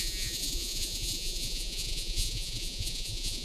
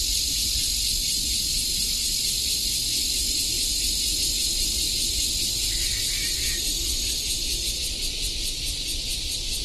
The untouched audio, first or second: second